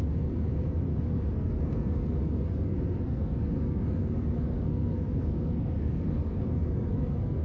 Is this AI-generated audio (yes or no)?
yes